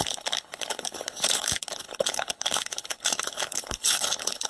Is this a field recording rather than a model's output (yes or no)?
no